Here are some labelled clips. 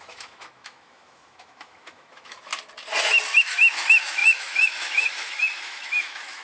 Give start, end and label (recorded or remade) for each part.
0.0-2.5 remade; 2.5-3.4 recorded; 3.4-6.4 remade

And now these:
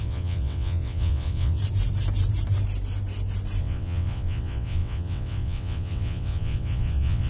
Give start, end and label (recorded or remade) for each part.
0.0-1.6 remade; 1.6-3.6 recorded; 3.6-7.3 remade